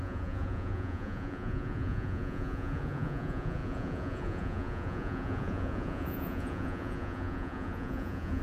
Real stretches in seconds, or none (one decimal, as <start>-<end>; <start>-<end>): none